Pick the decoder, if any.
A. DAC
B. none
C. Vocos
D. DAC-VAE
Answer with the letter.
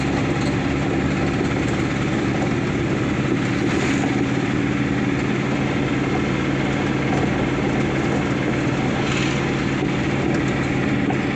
B